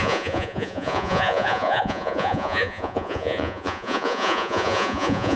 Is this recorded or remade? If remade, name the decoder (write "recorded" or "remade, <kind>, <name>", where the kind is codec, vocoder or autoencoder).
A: remade, vocoder, Vocos